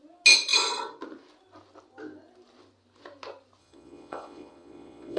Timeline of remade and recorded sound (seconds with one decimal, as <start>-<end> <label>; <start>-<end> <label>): 0.0-3.6 recorded; 3.6-5.2 remade